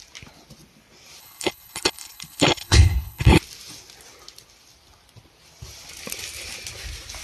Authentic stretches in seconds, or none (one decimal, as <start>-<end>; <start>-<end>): 0.0-1.2; 3.4-7.2